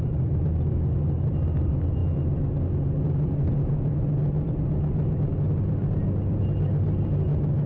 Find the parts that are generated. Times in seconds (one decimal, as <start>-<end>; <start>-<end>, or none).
none